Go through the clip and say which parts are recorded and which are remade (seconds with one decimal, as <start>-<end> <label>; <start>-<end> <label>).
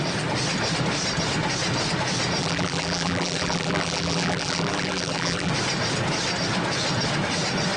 0.0-2.4 recorded; 2.4-5.5 remade; 5.5-7.8 recorded